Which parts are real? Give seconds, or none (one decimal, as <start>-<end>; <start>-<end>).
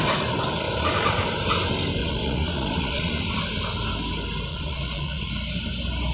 0.0-2.0; 3.2-4.5; 5.3-6.1